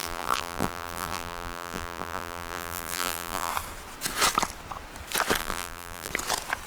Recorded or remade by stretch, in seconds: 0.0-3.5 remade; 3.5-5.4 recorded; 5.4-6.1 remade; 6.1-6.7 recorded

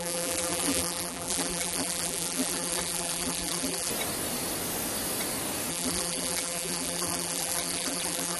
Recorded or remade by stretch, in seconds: 0.0-3.9 remade; 3.9-5.7 recorded; 5.7-8.4 remade

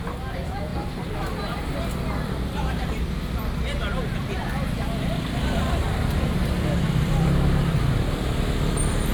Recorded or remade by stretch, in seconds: 0.0-9.1 recorded

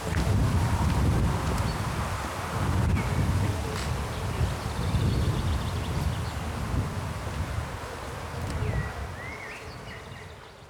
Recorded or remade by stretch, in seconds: 0.0-0.4 recorded; 0.4-1.2 remade; 1.2-10.7 recorded